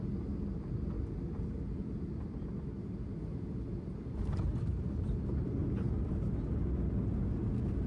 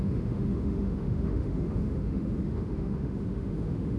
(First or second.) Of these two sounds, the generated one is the second